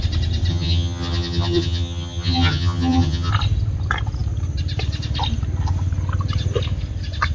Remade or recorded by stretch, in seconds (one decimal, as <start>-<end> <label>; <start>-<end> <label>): 0.0-0.5 recorded; 0.5-3.3 remade; 3.3-7.3 recorded